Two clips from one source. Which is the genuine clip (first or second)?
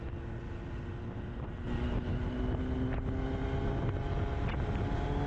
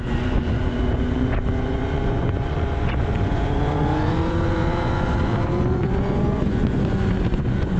first